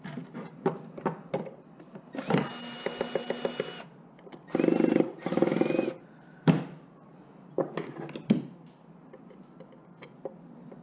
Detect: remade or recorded recorded